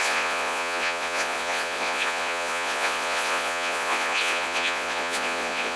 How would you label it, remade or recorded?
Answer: remade